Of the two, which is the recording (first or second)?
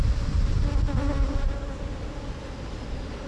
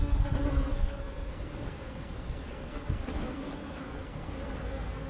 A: first